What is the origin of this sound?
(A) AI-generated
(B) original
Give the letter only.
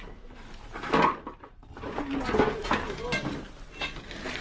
B